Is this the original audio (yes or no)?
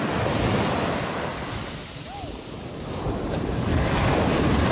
yes